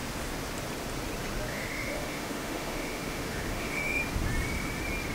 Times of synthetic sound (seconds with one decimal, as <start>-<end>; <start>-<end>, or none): 1.5-4.0